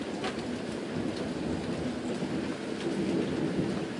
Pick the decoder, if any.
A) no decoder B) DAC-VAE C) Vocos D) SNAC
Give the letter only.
A